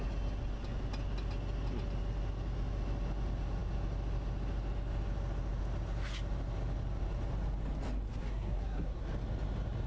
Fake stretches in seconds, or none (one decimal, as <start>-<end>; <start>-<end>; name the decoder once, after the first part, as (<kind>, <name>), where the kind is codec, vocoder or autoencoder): 8.1-9.0 (codec, SNAC)